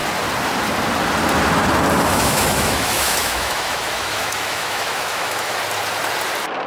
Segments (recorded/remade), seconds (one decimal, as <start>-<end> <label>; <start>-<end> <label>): 0.0-2.1 recorded; 2.1-5.6 remade; 5.6-6.7 recorded